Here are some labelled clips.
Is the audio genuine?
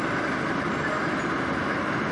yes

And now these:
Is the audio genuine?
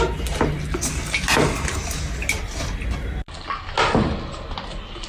yes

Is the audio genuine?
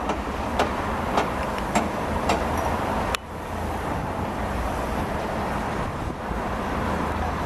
no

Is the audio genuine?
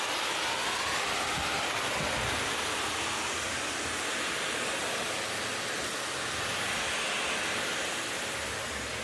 yes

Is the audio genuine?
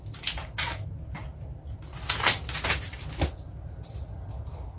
yes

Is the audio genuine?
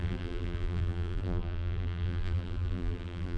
no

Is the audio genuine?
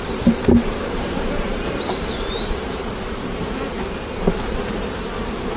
no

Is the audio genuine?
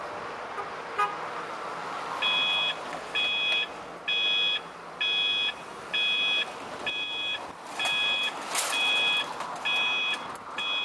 yes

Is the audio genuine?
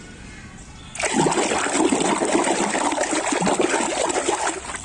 yes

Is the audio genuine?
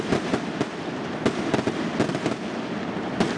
yes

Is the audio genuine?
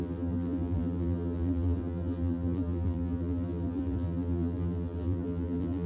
no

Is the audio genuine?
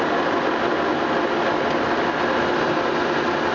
yes